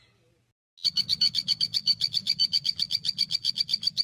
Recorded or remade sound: recorded